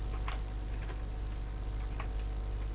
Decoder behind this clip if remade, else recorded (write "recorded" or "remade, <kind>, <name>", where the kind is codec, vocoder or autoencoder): recorded